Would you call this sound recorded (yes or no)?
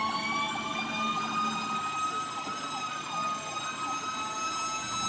yes